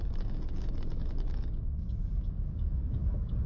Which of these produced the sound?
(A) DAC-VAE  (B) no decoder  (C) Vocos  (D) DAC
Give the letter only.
D